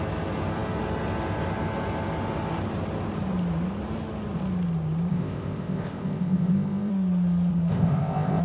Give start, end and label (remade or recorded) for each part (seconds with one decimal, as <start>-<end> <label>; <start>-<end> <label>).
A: 0.0-5.1 recorded; 5.1-6.9 remade; 6.9-7.7 recorded; 7.7-8.4 remade